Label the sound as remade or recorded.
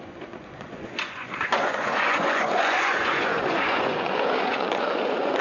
remade